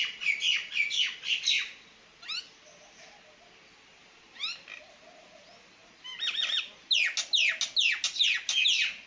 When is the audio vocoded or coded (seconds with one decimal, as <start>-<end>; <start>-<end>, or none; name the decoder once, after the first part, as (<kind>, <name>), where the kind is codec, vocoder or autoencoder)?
none